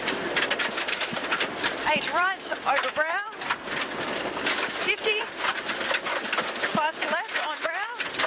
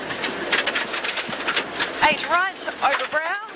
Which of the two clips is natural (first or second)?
second